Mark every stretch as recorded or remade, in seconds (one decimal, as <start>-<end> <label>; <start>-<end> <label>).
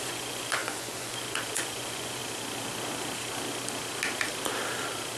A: 0.0-2.2 remade; 2.2-5.2 recorded